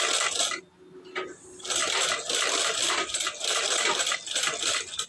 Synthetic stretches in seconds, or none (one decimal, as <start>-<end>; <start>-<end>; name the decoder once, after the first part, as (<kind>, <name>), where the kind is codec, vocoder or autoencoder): none